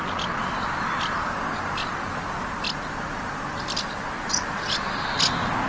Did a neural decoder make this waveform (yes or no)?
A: no